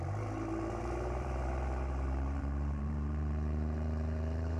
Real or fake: fake